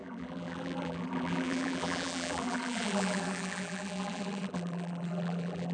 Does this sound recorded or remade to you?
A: remade